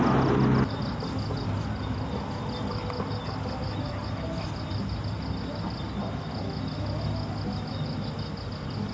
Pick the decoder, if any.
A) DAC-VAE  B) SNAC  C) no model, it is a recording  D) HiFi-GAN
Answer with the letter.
C